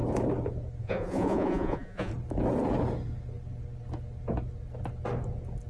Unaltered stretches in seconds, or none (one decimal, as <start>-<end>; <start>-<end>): 0.0-0.8; 2.1-5.7